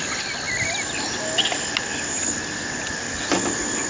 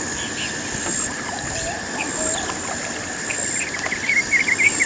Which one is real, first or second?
first